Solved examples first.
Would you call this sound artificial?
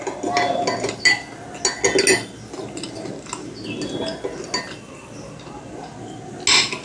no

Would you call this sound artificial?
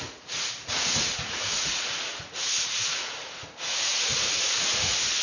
yes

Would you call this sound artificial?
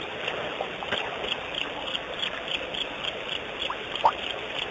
no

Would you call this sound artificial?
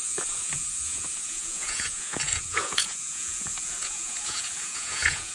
yes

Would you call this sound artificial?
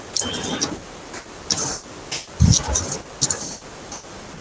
no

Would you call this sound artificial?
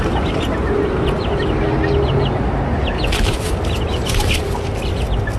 no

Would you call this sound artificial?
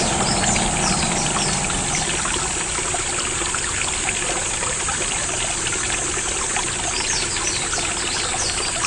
no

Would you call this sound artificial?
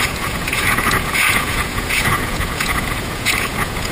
yes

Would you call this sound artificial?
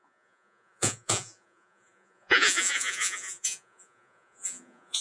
yes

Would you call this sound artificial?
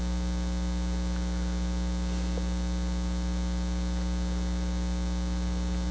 no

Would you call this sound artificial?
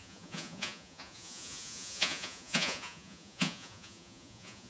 yes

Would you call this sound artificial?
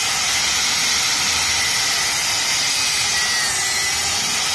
no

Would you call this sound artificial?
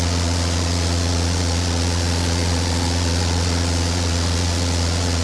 yes